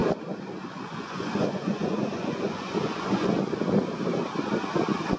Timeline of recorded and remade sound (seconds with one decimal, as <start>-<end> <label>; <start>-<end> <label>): 0.0-0.7 recorded; 0.7-3.3 remade; 3.3-5.2 recorded